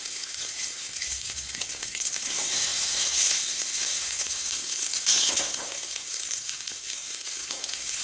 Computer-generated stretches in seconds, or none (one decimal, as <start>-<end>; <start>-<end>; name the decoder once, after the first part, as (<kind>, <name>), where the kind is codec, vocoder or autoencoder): 0.0-8.0 (codec, SNAC)